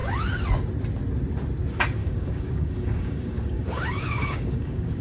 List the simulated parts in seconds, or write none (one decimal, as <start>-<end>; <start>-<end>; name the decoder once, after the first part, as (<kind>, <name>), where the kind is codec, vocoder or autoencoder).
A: 2.0-5.0 (codec, DAC)